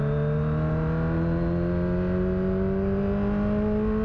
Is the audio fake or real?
real